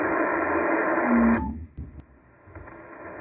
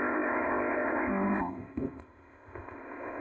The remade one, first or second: second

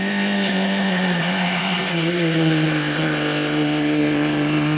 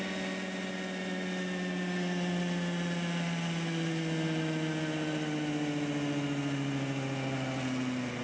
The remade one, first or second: first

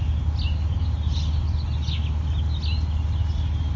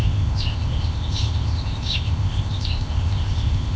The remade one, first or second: second